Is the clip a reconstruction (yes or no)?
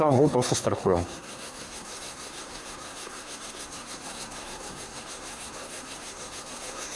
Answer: yes